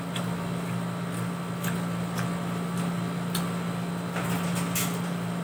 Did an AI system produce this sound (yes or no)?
no